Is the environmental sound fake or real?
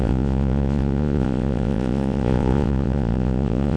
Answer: fake